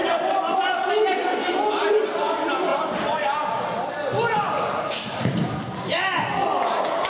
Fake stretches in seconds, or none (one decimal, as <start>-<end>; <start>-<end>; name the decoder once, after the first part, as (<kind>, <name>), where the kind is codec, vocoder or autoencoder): 0.0-2.7 (vocoder, BigVGAN v2)